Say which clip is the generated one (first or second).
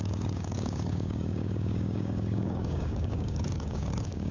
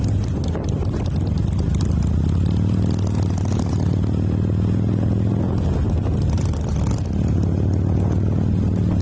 first